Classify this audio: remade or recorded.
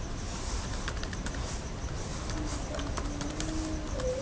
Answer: recorded